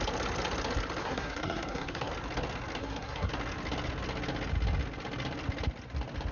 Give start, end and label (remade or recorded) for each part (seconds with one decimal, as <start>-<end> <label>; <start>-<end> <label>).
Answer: 0.0-1.0 recorded; 1.0-2.1 remade; 2.1-2.8 recorded; 2.8-3.3 remade; 3.3-6.3 recorded